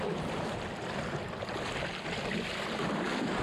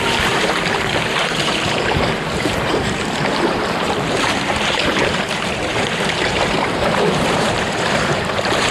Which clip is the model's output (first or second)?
second